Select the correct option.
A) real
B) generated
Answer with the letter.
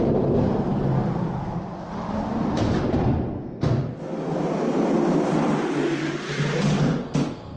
A